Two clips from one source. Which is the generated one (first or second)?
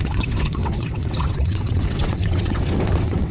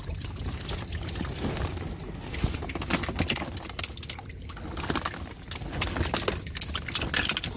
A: first